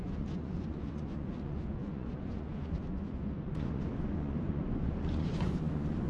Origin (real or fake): fake